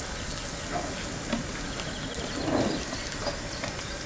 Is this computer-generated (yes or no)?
no